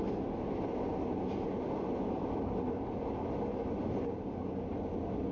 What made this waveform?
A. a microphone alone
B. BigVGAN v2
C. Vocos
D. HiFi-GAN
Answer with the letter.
A